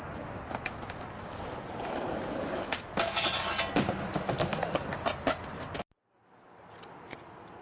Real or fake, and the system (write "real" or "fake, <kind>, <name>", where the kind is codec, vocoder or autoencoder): real